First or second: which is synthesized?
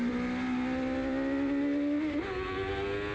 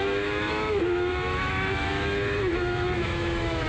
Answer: second